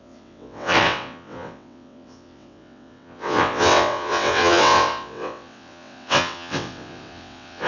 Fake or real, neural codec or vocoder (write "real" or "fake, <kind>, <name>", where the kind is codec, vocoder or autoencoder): fake, vocoder, WaveNeXt